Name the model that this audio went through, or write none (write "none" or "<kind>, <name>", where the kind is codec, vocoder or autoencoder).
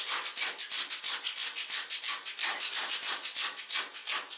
none